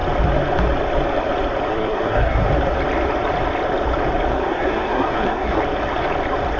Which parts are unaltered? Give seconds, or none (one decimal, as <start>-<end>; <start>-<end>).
0.0-1.7; 2.5-4.3; 5.6-6.6